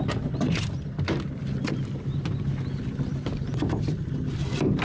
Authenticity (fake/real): real